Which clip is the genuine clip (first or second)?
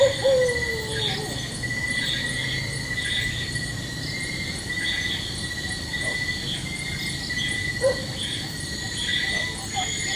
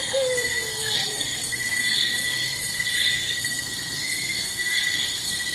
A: first